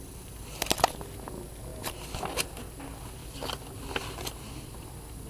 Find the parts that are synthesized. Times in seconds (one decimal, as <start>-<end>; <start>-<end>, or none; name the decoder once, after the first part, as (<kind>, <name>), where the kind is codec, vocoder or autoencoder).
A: none